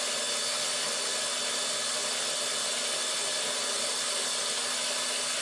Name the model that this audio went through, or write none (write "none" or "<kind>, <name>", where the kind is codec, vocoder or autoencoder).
none